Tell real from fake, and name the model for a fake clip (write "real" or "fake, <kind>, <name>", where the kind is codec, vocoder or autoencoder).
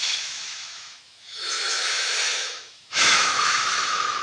fake, autoencoder, DAC-VAE